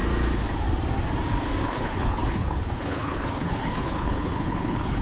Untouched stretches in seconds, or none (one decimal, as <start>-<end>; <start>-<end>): 0.0-1.6

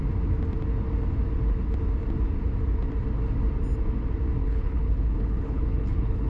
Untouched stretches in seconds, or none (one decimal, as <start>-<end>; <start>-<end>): 0.0-4.4

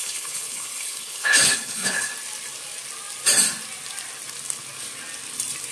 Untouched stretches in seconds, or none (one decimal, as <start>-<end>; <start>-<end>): 2.1-5.7

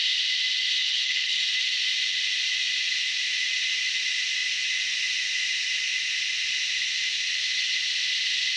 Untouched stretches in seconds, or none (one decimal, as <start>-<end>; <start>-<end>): 0.0-0.8; 1.4-8.6

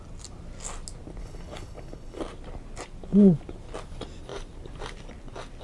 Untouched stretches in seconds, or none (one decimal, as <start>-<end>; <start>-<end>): 0.0-1.2; 2.2-5.6

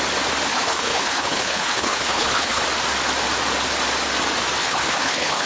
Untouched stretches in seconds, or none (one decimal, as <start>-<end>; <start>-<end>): 0.0-0.5; 2.6-4.6

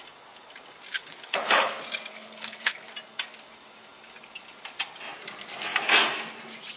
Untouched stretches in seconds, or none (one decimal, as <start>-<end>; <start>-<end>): 0.0-0.9; 1.7-2.1; 2.9-6.8